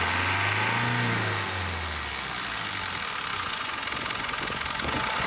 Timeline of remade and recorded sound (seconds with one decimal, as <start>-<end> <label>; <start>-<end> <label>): 0.0-3.3 recorded; 3.3-5.3 remade